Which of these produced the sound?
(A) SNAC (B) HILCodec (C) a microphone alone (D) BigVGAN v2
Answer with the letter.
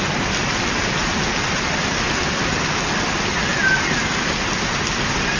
C